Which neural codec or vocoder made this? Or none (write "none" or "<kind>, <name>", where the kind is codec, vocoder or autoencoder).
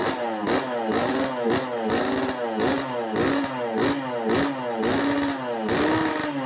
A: none